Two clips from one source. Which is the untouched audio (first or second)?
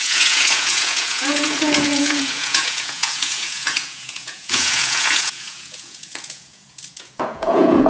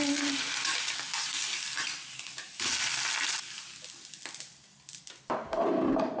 second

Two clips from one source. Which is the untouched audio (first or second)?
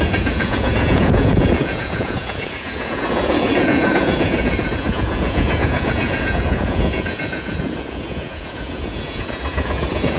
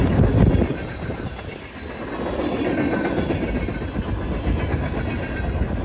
second